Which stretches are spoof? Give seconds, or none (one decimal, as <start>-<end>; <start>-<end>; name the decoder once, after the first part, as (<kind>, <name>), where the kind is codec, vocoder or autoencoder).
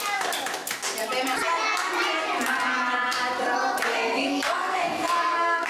3.9-5.7 (codec, SNAC)